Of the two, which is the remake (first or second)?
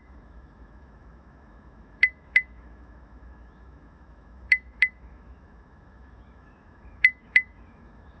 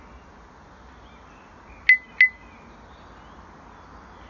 first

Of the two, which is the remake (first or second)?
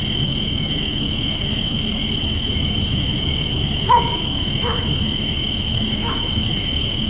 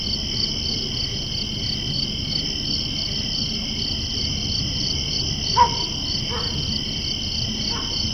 first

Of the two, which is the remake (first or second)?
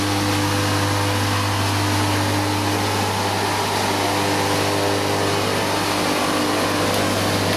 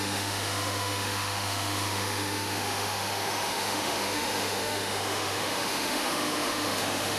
second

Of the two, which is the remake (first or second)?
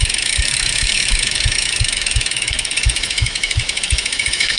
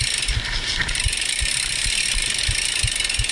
first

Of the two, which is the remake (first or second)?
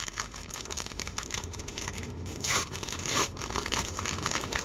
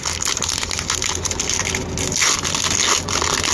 first